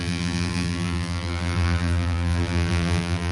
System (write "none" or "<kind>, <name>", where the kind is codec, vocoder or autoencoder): vocoder, BigVGAN v2